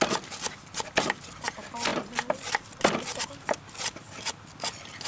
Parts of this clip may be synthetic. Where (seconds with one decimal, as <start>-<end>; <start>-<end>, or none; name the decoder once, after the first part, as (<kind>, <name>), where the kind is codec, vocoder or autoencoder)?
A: none